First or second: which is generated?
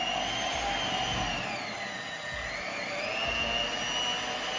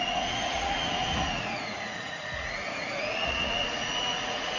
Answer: second